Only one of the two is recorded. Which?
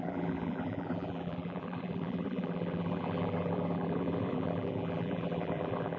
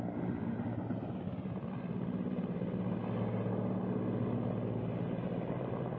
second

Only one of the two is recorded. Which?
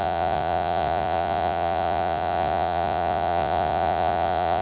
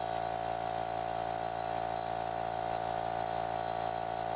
second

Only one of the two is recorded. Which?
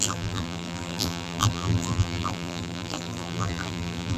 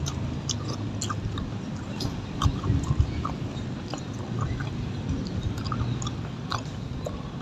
second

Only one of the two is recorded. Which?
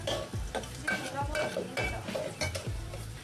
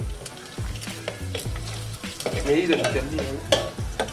second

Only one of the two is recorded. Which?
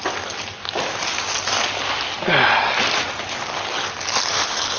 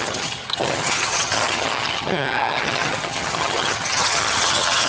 first